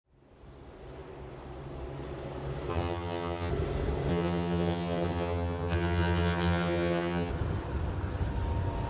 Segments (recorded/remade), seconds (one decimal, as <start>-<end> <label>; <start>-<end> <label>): 0.0-2.7 recorded; 2.7-3.5 remade; 3.5-4.1 recorded; 4.1-7.3 remade; 7.3-8.9 recorded